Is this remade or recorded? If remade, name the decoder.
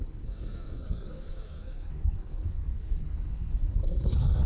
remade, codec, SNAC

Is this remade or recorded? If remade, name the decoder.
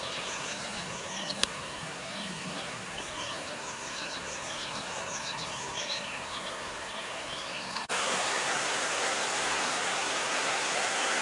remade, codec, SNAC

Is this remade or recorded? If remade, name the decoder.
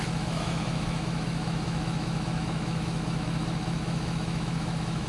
remade, autoencoder, DAC-VAE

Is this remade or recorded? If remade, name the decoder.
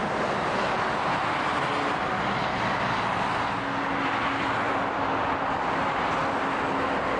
recorded